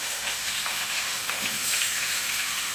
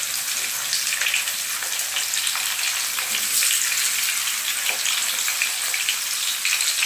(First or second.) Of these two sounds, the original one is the second